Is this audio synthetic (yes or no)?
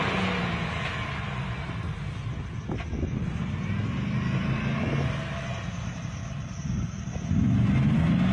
no